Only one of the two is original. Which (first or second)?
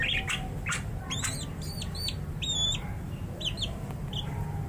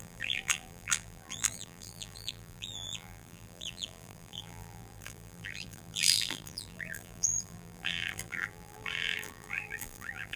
first